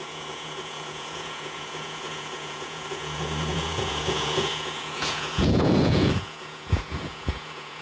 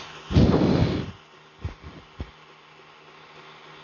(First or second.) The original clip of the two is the second